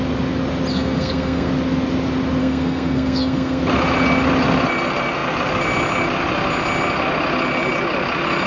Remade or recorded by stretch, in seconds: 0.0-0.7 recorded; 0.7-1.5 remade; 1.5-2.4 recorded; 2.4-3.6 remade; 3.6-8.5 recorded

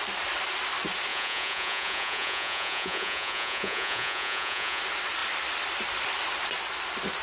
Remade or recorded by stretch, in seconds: 0.0-1.1 recorded; 1.1-4.8 remade; 4.8-7.2 recorded

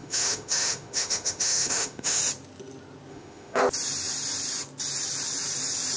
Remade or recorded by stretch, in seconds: 0.0-2.2 remade; 2.2-3.1 recorded; 3.1-3.6 remade; 3.6-6.0 recorded

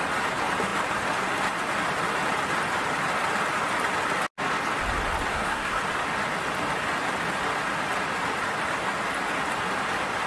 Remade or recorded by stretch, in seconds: 0.0-5.3 recorded; 5.3-5.8 remade; 5.8-10.3 recorded